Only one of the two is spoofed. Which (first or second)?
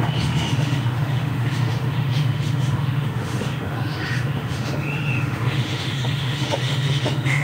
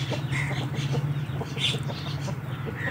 first